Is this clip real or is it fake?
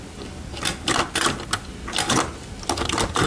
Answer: real